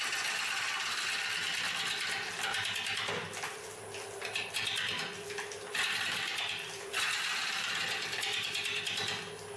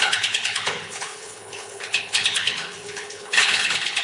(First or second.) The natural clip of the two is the first